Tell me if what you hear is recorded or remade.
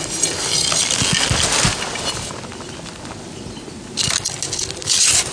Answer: recorded